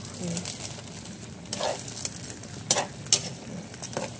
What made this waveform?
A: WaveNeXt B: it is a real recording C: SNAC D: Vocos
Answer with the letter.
B